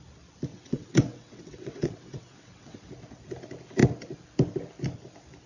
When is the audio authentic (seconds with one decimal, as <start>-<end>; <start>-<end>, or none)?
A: 0.0-0.5; 2.9-5.5